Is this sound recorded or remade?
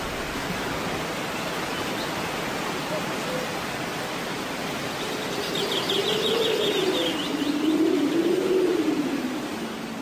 recorded